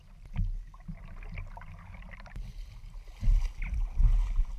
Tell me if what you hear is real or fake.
real